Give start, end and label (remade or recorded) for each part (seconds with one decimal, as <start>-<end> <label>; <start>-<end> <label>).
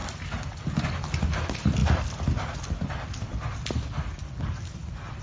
0.0-5.2 recorded